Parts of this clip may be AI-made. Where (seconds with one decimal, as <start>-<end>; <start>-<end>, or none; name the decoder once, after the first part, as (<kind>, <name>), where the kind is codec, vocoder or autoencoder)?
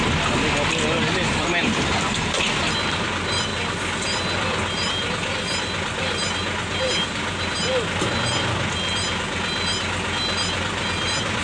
none